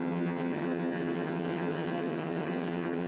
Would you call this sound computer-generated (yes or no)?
yes